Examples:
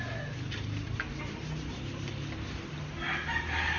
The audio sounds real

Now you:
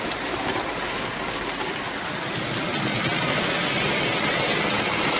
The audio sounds real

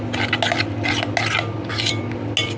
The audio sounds real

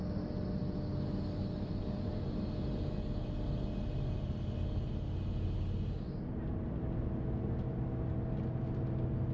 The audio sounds real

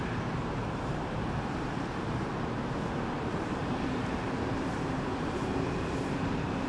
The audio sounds fake